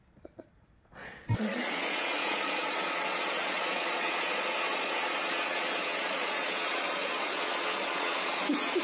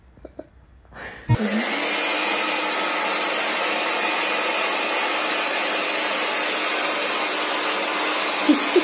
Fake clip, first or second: first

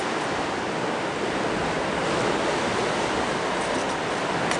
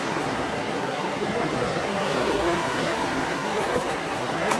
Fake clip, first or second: second